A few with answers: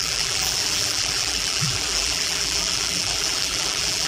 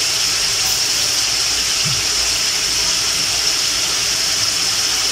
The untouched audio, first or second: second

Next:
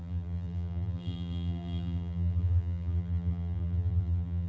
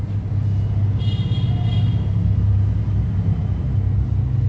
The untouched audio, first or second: second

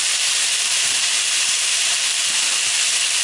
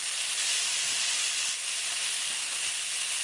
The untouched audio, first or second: second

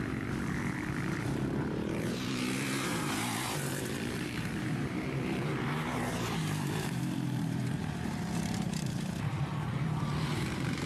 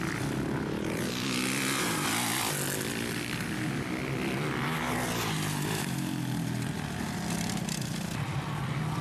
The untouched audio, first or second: second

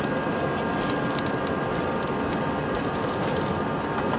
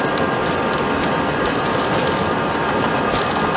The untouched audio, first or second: first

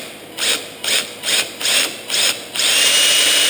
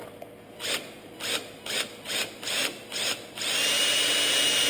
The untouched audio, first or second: second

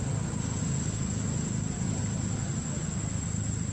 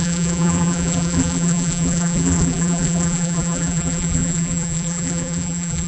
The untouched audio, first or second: first